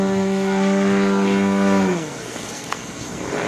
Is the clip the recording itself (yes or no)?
no